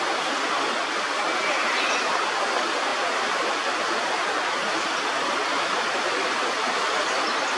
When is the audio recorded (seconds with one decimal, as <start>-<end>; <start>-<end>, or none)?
0.0-7.6